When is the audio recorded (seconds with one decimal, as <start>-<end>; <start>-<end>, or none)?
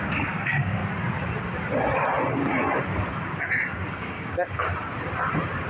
0.8-3.4; 4.7-5.7